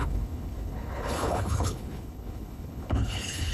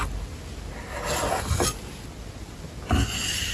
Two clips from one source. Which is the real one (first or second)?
second